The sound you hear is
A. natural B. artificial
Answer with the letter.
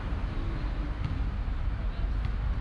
A